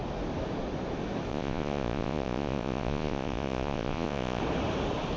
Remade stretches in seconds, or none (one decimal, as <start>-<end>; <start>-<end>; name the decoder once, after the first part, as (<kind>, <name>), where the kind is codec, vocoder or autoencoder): 1.3-4.4 (vocoder, Vocos)